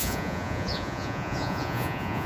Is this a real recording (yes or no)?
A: no